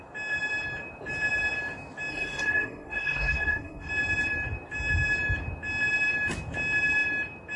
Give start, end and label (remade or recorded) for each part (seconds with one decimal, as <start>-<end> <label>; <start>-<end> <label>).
0.0-2.1 recorded; 2.1-3.9 remade; 3.9-7.6 recorded